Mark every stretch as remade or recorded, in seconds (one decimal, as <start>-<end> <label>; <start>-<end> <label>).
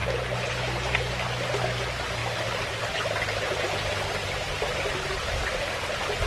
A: 0.0-6.3 recorded